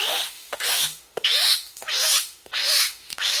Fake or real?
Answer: fake